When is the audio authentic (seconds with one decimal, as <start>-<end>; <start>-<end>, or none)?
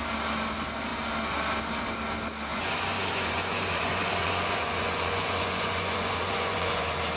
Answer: 0.0-2.5; 6.8-7.2